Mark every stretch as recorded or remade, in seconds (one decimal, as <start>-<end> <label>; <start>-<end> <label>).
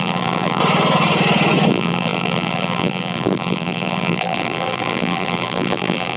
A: 0.0-0.6 remade; 0.6-1.7 recorded; 1.7-6.2 remade